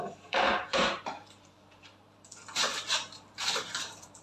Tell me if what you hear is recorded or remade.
remade